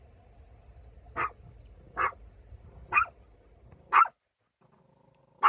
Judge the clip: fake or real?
real